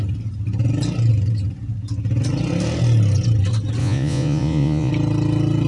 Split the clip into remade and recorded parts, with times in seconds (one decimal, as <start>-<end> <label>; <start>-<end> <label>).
0.0-3.8 recorded; 3.8-4.9 remade; 4.9-5.7 recorded